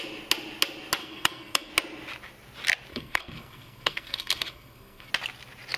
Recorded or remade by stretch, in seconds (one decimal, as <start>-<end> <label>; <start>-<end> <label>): 0.0-1.0 recorded; 1.0-1.7 remade; 1.7-2.9 recorded; 2.9-5.1 remade; 5.1-5.8 recorded